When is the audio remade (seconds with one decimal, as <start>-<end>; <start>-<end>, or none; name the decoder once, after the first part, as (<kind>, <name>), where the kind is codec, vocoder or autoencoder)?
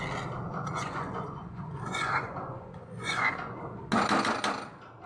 0.5-3.6 (vocoder, Vocos)